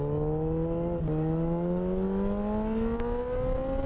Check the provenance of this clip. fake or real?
real